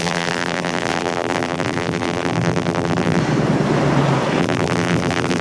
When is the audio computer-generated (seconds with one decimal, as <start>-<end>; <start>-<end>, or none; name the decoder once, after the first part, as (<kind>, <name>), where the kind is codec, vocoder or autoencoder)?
0.0-3.2 (vocoder, BigVGAN v2); 4.4-5.4